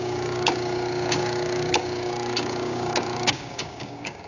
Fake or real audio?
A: fake